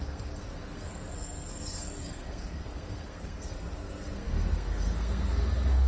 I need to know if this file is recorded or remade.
remade